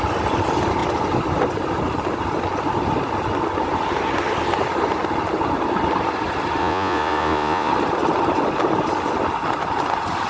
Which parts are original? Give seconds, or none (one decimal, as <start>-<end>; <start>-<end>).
0.0-6.6; 7.7-10.3